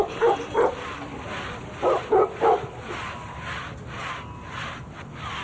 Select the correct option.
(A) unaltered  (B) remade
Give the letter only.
A